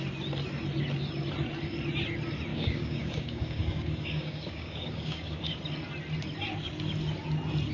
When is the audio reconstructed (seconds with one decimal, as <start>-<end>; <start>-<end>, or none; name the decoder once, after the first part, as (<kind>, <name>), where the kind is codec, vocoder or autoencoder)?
2.5-5.6 (codec, DAC)